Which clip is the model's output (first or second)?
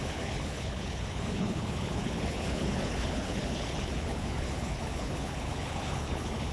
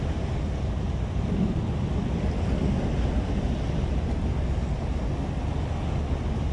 first